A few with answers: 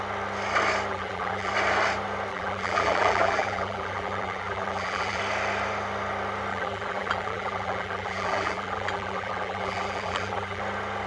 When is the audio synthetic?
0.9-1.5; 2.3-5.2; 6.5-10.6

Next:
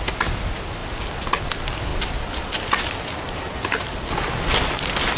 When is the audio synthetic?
none

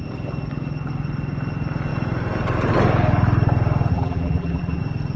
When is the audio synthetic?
3.9-4.8